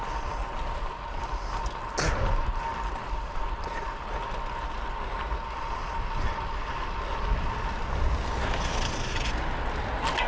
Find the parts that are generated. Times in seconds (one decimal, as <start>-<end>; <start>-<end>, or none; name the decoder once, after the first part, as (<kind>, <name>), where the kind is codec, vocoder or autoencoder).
none